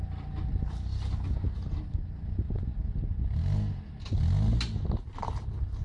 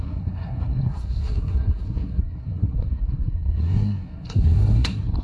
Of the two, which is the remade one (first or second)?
second